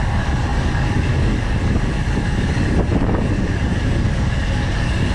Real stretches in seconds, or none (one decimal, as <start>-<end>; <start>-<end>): none